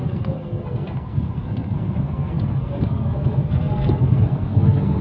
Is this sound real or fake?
fake